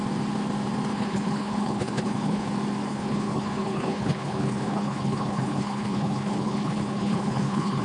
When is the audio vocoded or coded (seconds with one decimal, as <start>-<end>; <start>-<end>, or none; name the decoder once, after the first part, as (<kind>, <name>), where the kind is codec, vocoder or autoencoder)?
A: 0.9-2.5 (codec, HILCodec); 2.9-7.8